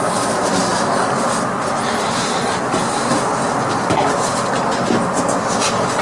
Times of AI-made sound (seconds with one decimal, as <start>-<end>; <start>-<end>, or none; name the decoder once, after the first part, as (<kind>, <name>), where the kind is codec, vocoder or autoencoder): none